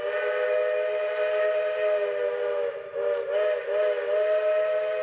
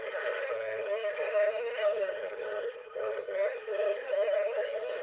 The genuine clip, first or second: first